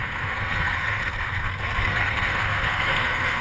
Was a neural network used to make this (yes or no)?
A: yes